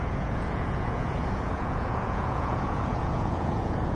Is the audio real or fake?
fake